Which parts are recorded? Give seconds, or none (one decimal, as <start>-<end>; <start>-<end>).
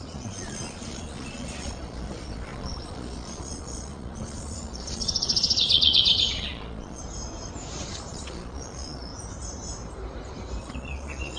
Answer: 7.0-8.1; 9.1-10.6